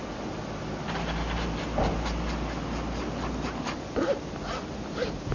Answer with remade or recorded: recorded